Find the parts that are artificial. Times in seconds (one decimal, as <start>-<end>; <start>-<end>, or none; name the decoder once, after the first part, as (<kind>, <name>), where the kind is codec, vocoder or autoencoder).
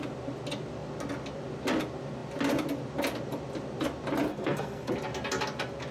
4.3-4.9 (codec, SNAC)